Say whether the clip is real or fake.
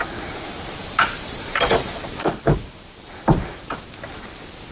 fake